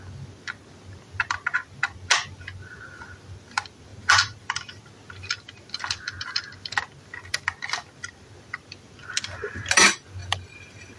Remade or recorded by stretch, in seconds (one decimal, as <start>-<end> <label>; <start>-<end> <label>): 0.0-11.0 recorded